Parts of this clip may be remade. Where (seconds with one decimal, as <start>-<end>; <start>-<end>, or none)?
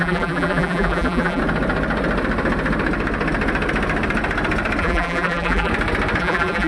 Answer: 0.0-1.4; 4.8-5.7; 6.2-6.7